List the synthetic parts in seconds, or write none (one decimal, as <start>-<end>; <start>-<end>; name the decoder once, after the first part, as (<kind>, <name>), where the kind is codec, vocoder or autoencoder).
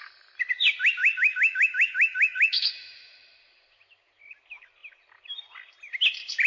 1.0-3.4 (autoencoder, DAC-VAE)